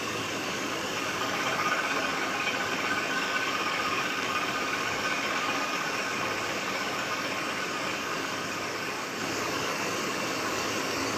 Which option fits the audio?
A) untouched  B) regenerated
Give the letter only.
B